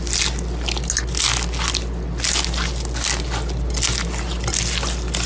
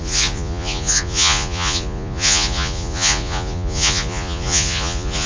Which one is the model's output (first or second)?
second